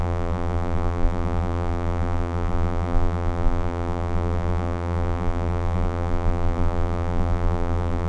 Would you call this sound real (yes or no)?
no